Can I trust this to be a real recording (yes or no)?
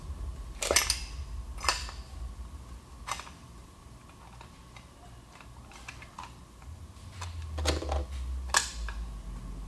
yes